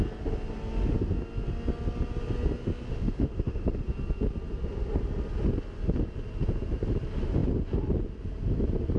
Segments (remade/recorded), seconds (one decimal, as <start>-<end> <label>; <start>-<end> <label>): 0.0-2.9 recorded; 2.9-3.8 remade; 3.8-9.0 recorded